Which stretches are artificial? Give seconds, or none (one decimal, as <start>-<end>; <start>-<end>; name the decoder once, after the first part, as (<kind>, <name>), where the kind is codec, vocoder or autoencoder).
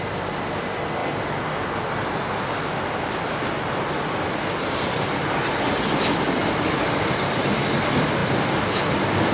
none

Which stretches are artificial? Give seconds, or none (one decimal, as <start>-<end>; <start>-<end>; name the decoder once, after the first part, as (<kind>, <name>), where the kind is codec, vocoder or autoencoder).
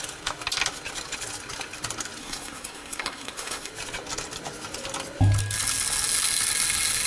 2.2-3.7 (codec, SNAC)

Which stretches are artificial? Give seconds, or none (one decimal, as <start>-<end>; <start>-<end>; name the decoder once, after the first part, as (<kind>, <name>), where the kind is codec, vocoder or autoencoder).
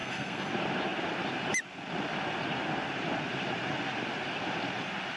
0.0-0.5 (codec, SNAC)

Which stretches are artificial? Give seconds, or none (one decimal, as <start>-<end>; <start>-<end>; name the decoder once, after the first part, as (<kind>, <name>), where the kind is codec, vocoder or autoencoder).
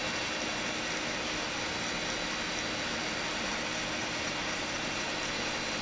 4.0-5.8 (vocoder, BigVGAN v2)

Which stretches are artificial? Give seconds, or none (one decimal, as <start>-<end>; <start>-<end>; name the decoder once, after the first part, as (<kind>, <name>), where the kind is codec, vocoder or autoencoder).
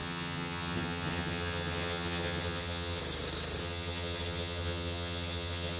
0.0-3.0 (vocoder, HiFi-GAN); 3.6-5.8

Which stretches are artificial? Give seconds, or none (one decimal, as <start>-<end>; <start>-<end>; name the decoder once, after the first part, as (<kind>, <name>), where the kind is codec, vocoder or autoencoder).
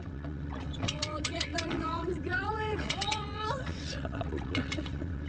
0.0-5.3 (vocoder, WaveNeXt)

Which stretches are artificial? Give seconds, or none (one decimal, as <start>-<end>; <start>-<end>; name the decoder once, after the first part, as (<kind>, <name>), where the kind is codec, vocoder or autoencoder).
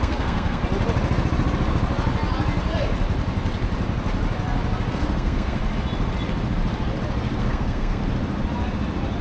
0.0-0.6 (codec, SNAC); 4.9-5.6; 7.4-8.0